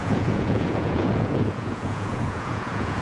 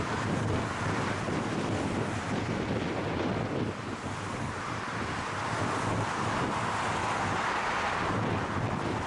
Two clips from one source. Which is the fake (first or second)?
first